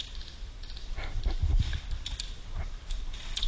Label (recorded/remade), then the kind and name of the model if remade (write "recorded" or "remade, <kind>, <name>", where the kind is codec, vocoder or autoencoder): recorded